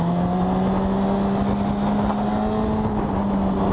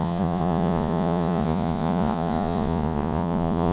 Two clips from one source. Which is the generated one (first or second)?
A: second